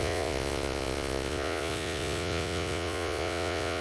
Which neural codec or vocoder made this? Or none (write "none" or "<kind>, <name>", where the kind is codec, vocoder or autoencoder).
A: vocoder, Vocos